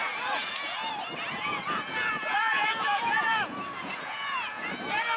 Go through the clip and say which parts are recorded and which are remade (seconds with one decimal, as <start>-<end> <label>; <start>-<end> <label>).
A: 0.0-0.8 remade; 0.8-1.3 recorded; 1.3-5.2 remade